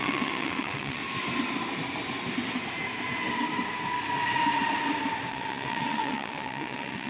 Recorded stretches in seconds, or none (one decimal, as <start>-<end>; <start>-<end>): 1.0-5.3